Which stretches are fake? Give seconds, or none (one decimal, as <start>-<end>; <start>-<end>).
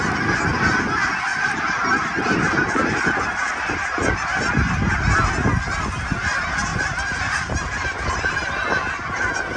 1.3-2.4; 6.7-8.9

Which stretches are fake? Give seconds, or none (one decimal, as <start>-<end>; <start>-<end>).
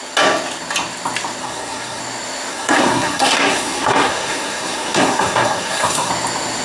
1.4-2.0; 2.5-6.1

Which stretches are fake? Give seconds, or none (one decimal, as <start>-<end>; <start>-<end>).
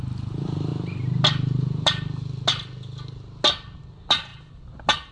none